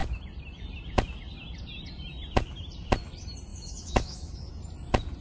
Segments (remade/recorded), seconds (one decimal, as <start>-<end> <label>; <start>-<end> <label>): 0.0-3.5 recorded; 3.5-4.5 remade; 4.5-5.2 recorded